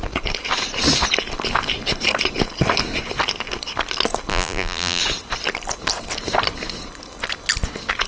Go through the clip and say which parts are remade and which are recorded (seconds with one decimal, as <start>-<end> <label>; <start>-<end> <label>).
0.0-4.3 recorded; 4.3-5.0 remade; 5.0-8.1 recorded